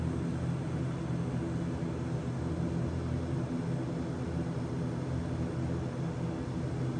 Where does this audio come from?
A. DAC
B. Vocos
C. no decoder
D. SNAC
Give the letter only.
C